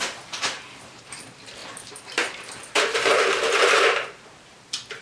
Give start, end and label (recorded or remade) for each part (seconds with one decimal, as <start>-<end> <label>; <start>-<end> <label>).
0.0-1.6 recorded; 1.6-4.6 remade; 4.6-5.0 recorded

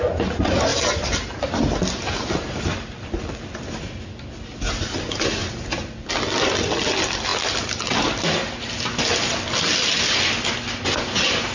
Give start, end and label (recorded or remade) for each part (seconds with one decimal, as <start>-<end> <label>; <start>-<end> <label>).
0.0-5.4 recorded; 5.4-6.1 remade; 6.1-11.5 recorded